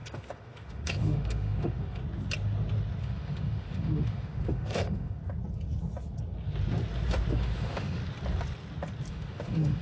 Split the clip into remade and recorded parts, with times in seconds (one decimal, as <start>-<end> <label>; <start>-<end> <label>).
0.0-2.0 remade; 2.0-3.0 recorded; 3.0-5.2 remade; 5.2-7.3 recorded; 7.3-8.0 remade; 8.0-9.1 recorded; 9.1-9.8 remade